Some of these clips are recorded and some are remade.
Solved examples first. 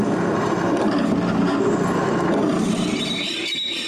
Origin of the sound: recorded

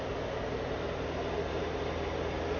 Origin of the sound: recorded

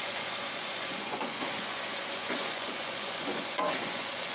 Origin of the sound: remade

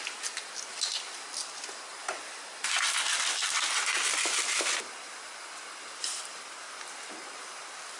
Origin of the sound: recorded